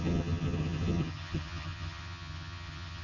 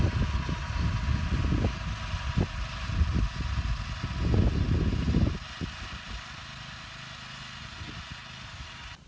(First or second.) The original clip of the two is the second